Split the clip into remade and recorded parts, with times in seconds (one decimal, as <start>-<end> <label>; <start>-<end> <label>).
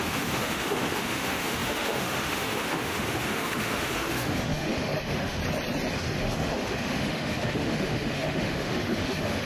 0.0-5.4 remade; 5.4-5.9 recorded; 5.9-9.5 remade